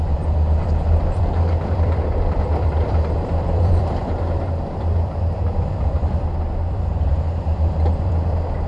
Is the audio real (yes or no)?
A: no